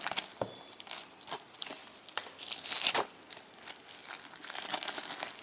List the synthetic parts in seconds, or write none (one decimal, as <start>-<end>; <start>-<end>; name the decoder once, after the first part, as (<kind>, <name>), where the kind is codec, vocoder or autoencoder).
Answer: none